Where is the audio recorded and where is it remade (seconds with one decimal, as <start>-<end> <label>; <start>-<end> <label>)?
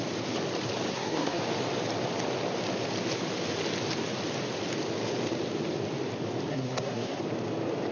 0.0-0.9 recorded; 0.9-1.4 remade; 1.4-6.5 recorded; 6.5-7.2 remade; 7.2-7.9 recorded